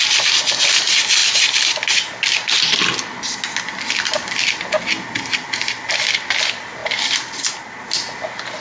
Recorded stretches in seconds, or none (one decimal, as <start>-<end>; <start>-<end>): 0.0-8.6